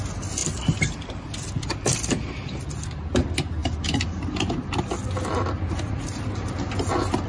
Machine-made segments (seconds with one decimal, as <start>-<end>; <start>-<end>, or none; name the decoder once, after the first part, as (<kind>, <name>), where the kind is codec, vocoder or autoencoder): none